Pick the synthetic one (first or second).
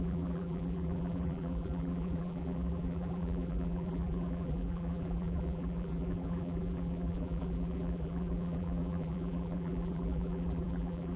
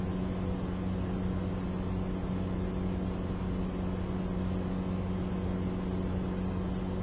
first